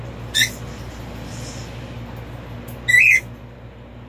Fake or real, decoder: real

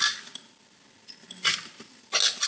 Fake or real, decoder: real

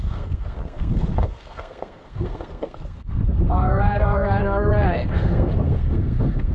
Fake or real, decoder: fake, codec, SNAC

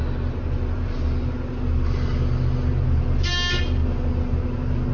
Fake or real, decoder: real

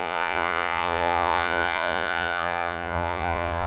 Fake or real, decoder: fake, vocoder, Vocos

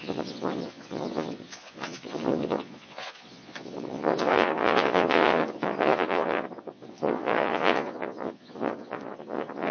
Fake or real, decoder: fake, vocoder, Vocos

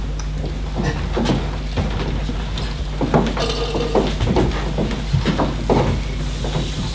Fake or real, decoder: real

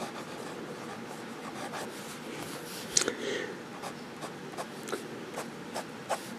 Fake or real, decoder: real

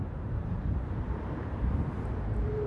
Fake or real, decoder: fake, vocoder, BigVGAN v2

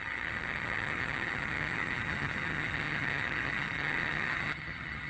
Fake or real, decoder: fake, vocoder, HiFi-GAN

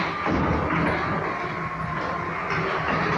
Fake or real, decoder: real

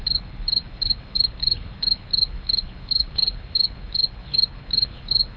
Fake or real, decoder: fake, codec, HILCodec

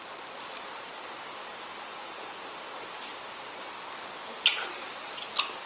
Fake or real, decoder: real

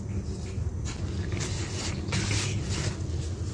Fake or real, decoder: real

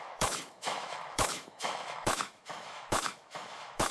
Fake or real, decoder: fake, autoencoder, DAC-VAE